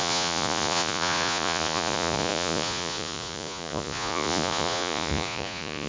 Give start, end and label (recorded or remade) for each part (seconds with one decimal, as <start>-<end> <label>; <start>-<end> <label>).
0.0-5.9 remade